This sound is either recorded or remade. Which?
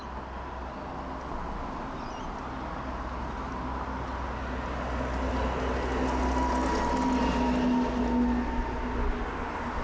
recorded